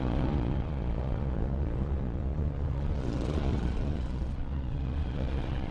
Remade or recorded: remade